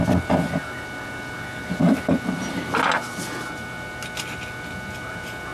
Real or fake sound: real